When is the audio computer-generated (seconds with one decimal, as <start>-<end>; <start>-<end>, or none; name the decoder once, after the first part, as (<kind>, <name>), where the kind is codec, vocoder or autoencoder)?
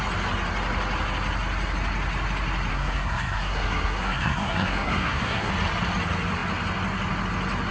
2.7-5.5 (codec, SNAC)